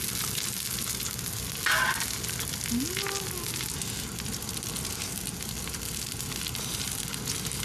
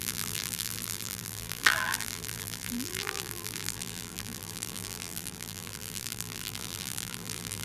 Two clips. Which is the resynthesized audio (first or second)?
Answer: second